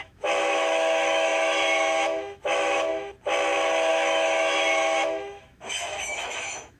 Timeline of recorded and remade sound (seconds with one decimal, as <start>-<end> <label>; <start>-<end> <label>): 0.0-2.9 remade; 2.9-3.9 recorded; 3.9-6.8 remade